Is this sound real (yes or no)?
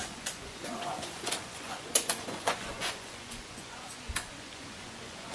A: no